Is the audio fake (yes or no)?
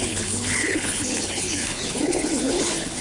yes